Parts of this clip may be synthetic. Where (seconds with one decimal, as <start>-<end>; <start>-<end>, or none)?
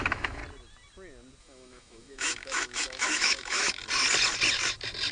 0.0-0.4; 1.4-3.8